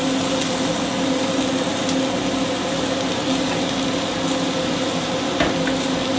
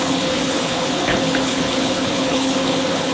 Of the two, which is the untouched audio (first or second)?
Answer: first